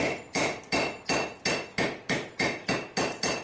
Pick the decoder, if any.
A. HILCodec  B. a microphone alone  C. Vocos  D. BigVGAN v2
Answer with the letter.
B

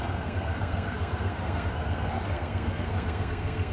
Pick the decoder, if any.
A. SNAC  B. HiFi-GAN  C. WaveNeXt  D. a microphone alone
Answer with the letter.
A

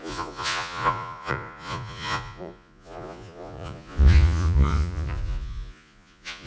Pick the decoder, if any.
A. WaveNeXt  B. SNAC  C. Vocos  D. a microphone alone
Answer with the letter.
C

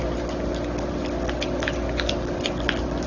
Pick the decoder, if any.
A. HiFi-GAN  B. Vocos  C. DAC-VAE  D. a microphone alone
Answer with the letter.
D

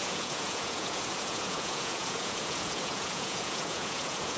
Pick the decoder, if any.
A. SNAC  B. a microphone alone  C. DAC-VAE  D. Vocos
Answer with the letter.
D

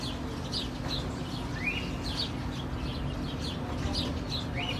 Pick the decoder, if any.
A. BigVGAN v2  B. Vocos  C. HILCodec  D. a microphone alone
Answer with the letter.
D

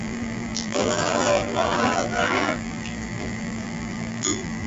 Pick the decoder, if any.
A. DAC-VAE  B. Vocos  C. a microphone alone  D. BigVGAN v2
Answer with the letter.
D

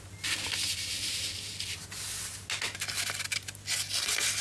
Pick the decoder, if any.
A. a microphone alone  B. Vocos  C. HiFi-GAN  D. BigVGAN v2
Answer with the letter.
A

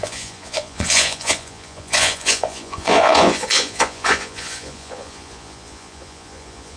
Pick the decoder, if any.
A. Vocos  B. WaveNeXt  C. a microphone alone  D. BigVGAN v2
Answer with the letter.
A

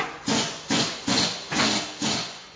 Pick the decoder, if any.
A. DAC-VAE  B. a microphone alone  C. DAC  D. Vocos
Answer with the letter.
D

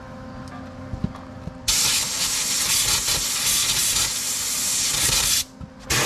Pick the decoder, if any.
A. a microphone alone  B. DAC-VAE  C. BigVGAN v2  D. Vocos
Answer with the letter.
A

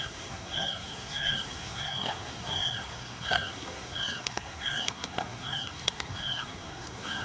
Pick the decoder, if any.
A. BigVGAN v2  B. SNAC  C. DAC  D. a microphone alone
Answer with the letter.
B